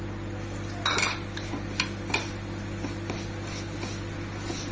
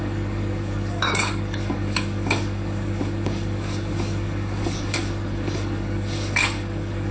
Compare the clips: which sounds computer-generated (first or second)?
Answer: second